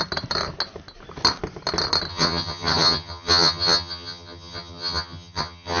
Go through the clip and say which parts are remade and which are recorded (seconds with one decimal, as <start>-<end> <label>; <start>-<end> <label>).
0.0-2.1 recorded; 2.1-5.8 remade